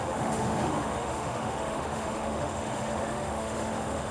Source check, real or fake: fake